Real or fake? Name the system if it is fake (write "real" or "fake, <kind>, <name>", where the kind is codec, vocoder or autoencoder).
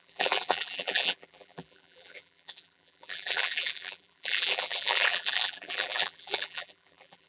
fake, vocoder, BigVGAN v2